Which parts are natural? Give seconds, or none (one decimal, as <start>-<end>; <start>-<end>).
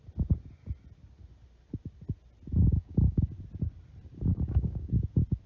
0.0-2.6; 3.2-4.3; 4.9-5.5